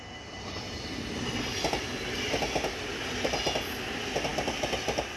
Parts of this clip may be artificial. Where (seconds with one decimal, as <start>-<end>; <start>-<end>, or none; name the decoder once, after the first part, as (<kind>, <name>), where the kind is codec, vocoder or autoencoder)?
none